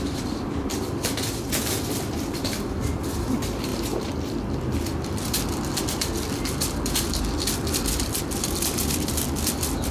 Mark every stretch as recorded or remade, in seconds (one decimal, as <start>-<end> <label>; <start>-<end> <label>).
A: 0.0-3.7 remade; 3.7-5.8 recorded; 5.8-9.9 remade